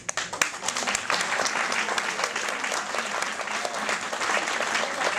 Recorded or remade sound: recorded